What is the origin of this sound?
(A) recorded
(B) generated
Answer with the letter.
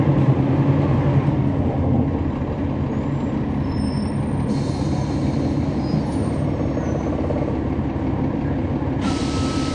A